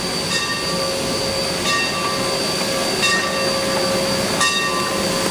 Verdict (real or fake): real